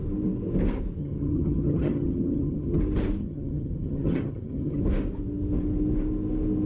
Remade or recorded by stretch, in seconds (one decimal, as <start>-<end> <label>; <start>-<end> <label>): 0.0-1.0 recorded; 1.0-2.8 remade; 2.8-3.2 recorded; 3.2-4.8 remade; 4.8-6.7 recorded